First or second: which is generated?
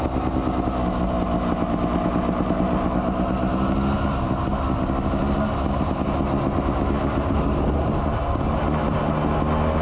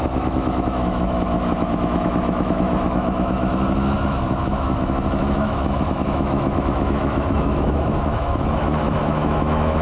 second